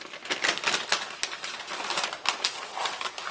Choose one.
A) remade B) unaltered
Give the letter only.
B